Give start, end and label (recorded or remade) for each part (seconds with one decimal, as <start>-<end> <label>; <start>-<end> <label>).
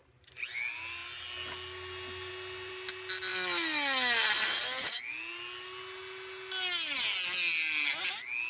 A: 0.0-8.5 recorded